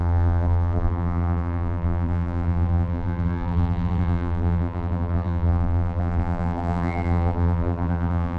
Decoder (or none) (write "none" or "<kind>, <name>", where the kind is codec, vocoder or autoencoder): vocoder, BigVGAN v2